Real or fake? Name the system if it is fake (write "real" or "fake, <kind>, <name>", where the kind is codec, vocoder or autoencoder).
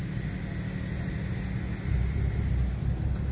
real